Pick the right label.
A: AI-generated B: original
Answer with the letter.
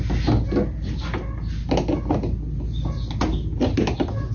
B